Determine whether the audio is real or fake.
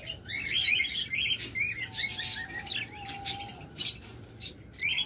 real